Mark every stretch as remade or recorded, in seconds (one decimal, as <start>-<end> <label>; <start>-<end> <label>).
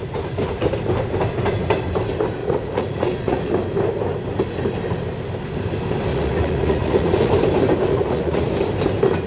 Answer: 0.0-2.4 recorded; 2.4-3.5 remade; 3.5-6.1 recorded; 6.1-7.3 remade; 7.3-7.9 recorded; 7.9-8.5 remade; 8.5-9.3 recorded